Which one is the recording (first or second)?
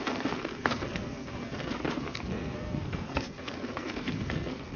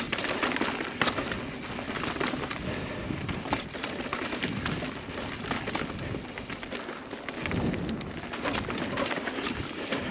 second